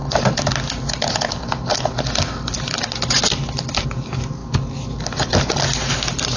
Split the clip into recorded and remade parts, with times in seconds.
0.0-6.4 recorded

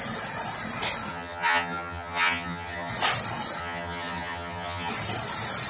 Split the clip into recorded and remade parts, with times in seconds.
0.0-1.1 recorded; 1.1-2.9 remade; 2.9-3.6 recorded; 3.6-4.9 remade; 4.9-5.7 recorded

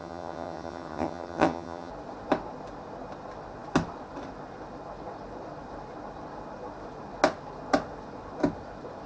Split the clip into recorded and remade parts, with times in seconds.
0.0-1.9 remade; 1.9-9.1 recorded

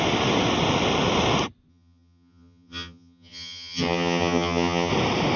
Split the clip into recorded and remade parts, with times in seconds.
0.0-1.7 recorded; 1.7-4.9 remade; 4.9-5.4 recorded

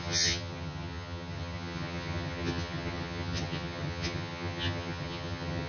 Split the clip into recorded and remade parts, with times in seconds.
0.0-5.7 remade

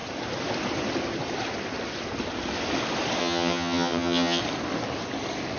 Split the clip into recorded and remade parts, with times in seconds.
0.0-3.2 recorded; 3.2-4.4 remade; 4.4-5.6 recorded

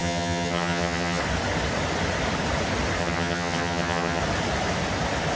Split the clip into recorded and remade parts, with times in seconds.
0.0-1.2 remade; 1.2-3.0 recorded; 3.0-4.2 remade; 4.2-5.4 recorded